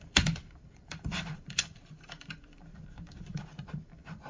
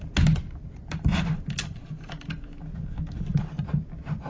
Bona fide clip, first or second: second